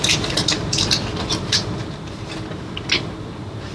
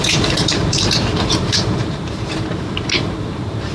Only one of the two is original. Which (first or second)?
first